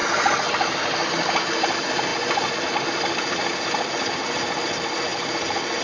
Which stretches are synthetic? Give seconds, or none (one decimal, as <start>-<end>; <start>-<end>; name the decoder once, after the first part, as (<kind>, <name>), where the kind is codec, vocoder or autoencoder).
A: none